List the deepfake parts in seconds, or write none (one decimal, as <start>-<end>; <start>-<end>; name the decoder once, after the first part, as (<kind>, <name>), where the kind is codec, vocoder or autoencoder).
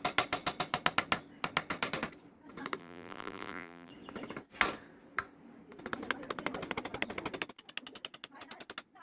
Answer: 2.8-3.9 (vocoder, BigVGAN v2)